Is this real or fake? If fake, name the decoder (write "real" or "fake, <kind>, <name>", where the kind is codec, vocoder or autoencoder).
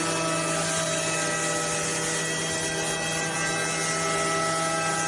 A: real